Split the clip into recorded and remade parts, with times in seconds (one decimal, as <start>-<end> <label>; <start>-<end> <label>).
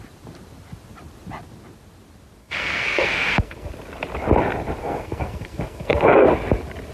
0.0-2.4 recorded; 2.4-3.7 remade; 3.7-4.8 recorded; 4.8-6.3 remade; 6.3-6.9 recorded